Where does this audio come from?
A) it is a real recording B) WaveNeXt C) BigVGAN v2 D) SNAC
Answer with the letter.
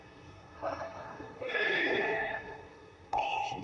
D